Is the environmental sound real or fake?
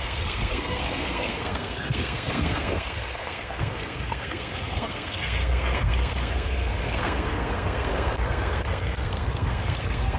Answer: fake